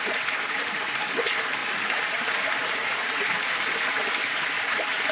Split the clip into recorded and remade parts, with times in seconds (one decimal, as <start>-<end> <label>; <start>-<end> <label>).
0.0-2.6 recorded; 2.6-3.3 remade; 3.3-5.1 recorded